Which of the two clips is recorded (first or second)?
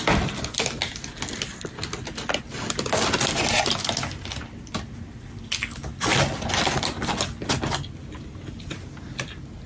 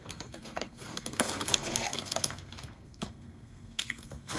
first